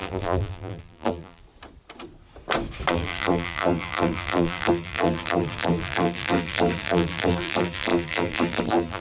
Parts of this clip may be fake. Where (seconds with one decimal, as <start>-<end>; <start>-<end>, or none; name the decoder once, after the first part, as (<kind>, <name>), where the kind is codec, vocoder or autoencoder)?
0.0-1.4 (vocoder, BigVGAN v2); 2.9-9.0